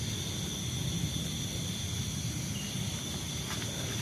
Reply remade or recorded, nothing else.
recorded